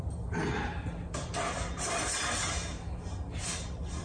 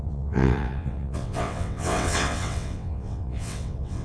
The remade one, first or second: second